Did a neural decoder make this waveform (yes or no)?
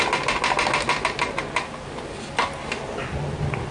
no